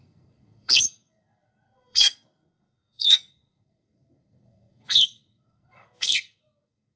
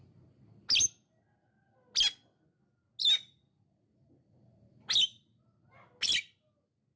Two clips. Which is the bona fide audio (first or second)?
second